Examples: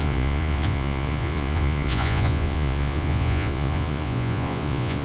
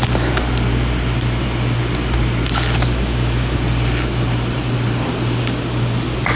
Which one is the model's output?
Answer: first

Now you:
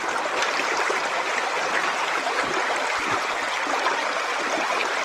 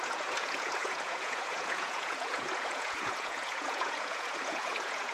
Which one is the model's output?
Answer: second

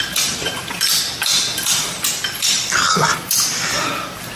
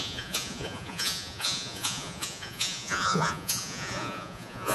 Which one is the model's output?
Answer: second